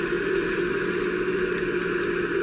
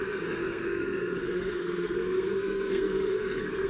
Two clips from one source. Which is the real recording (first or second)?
first